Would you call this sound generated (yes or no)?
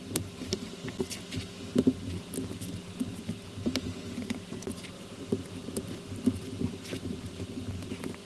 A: no